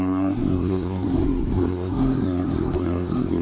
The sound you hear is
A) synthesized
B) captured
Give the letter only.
A